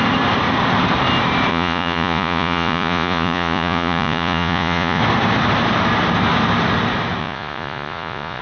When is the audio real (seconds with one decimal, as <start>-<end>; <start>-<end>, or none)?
0.0-1.5; 5.0-7.2